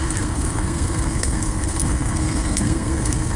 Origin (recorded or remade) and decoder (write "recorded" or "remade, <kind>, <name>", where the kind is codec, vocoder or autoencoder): remade, codec, SNAC